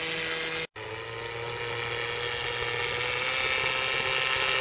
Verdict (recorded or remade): recorded